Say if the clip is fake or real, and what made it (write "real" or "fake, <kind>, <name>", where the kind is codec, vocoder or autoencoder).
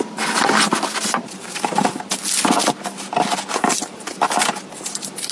real